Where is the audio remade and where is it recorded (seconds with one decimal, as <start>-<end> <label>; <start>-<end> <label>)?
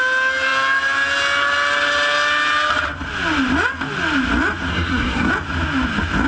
0.0-4.7 recorded; 4.7-5.3 remade; 5.3-6.3 recorded